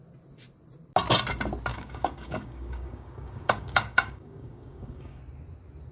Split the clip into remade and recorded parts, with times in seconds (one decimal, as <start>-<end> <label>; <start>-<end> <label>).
0.0-1.7 recorded; 1.7-5.2 remade; 5.2-5.9 recorded